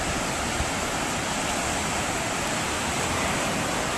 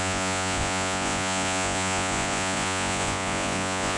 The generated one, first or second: second